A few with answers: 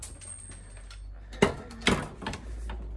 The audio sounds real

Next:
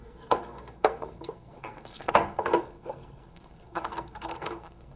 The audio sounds fake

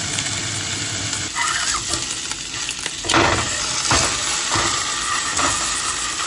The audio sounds real